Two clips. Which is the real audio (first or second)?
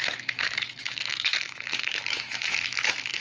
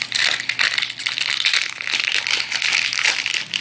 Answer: second